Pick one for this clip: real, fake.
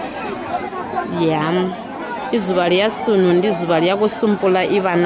real